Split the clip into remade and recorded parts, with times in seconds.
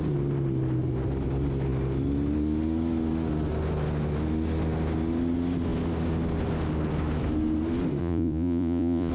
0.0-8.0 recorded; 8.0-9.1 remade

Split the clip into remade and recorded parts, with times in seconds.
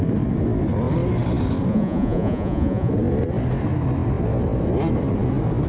0.0-1.7 recorded; 1.7-2.9 remade; 2.9-5.7 recorded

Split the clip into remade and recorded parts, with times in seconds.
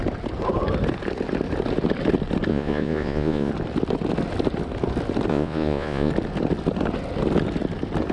0.0-2.5 recorded; 2.5-3.5 remade; 3.5-5.3 recorded; 5.3-6.1 remade; 6.1-8.1 recorded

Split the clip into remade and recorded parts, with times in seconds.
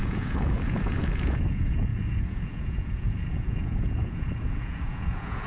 0.0-5.5 remade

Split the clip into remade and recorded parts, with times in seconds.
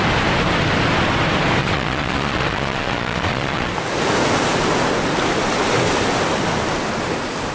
0.0-1.6 recorded; 1.6-3.7 remade; 3.7-7.5 recorded